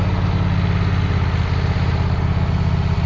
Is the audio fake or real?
real